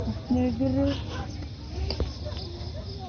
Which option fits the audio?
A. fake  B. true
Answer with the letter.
B